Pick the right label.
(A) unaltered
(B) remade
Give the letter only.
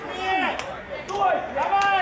A